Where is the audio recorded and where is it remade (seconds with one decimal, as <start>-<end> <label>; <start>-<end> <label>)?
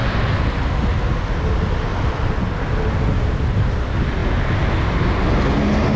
0.0-6.0 recorded